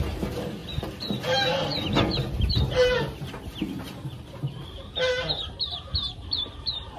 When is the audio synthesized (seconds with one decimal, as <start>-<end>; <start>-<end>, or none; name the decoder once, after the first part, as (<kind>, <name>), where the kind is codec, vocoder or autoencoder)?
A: 0.0-0.6 (vocoder, BigVGAN v2); 2.3-7.0